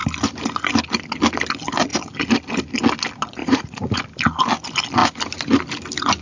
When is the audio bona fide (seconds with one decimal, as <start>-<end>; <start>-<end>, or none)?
0.0-3.4; 4.0-6.2